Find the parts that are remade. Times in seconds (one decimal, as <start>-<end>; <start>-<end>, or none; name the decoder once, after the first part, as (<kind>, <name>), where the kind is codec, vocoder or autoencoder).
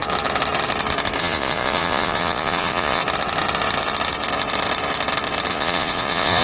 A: 1.2-3.0 (vocoder, Vocos); 5.5-6.4